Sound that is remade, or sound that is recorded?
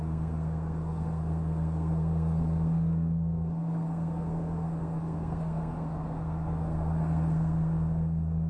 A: remade